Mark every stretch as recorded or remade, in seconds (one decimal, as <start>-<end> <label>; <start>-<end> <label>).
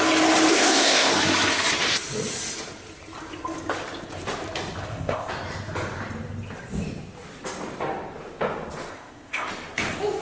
0.0-0.5 recorded; 0.5-1.1 remade; 1.1-4.8 recorded; 4.8-5.3 remade; 5.3-8.9 recorded; 8.9-9.5 remade; 9.5-10.2 recorded